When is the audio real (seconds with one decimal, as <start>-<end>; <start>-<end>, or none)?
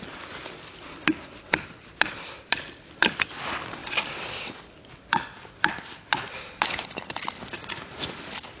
0.0-7.6; 8.2-8.6